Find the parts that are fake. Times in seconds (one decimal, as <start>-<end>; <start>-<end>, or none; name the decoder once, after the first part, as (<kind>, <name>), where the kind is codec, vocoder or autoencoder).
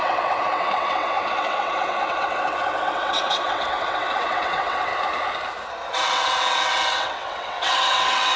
0.0-4.9 (vocoder, WaveNeXt); 5.9-8.4